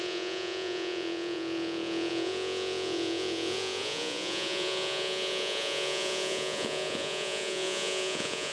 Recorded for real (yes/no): no